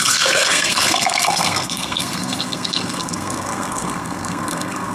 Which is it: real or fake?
fake